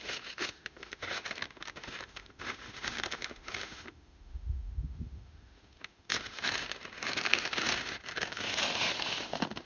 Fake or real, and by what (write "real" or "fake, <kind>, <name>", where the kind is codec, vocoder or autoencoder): fake, autoencoder, DAC-VAE